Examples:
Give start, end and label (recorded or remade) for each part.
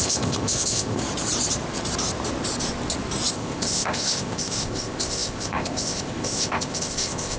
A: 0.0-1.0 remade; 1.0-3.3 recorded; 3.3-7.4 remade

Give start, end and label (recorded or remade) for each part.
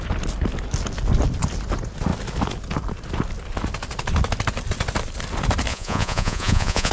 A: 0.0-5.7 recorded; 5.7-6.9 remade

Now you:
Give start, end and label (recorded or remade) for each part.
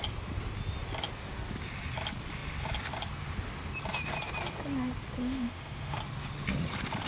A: 0.0-5.2 recorded; 5.2-6.0 remade; 6.0-7.1 recorded